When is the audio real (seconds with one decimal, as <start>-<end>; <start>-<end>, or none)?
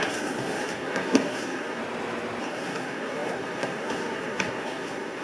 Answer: 1.8-2.4